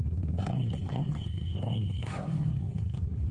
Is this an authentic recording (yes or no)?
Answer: no